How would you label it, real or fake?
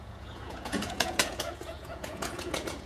fake